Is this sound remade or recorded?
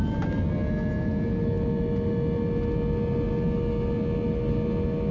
recorded